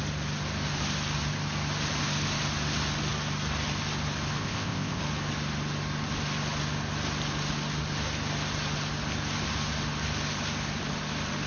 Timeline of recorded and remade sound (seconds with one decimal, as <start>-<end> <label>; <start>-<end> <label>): 0.0-4.4 recorded; 4.4-5.0 remade; 5.0-11.5 recorded